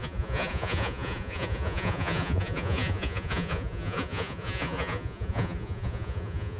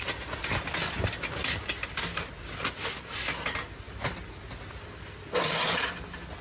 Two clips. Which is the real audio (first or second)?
second